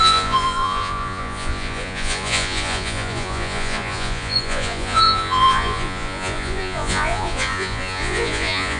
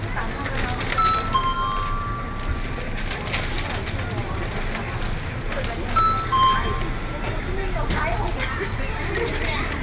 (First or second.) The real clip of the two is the second